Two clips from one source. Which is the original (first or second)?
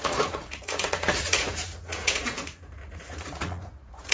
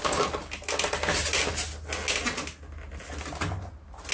second